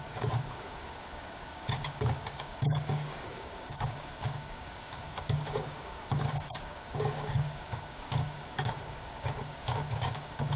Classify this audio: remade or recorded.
remade